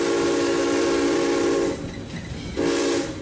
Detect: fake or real real